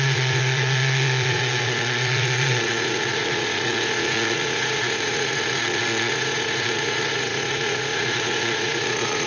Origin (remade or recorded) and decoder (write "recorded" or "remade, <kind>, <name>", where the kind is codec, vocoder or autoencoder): remade, vocoder, Vocos